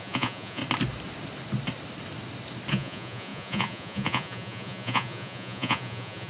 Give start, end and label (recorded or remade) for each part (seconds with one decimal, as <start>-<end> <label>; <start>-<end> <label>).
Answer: 0.0-0.6 remade; 0.6-2.7 recorded; 2.7-6.3 remade